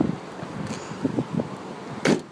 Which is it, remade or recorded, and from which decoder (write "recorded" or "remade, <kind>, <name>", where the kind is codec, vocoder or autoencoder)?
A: recorded